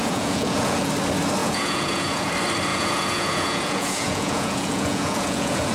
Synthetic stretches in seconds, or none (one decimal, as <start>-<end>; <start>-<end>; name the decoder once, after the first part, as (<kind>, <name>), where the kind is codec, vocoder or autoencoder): 0.0-0.9 (vocoder, Vocos); 1.4-2.3; 2.7-5.7